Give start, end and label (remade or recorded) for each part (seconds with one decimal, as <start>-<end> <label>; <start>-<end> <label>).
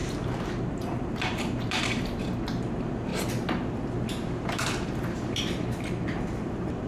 0.0-3.1 remade; 3.1-4.1 recorded; 4.1-6.9 remade